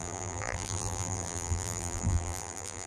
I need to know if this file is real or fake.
fake